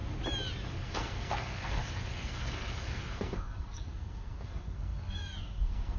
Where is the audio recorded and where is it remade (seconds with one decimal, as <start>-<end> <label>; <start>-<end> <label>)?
0.0-0.7 recorded; 0.7-6.0 remade